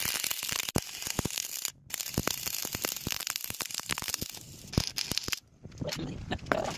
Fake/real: fake